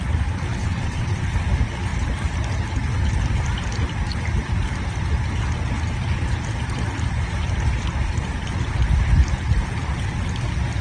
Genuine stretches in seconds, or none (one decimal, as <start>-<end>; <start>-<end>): 0.0-0.6; 1.2-10.8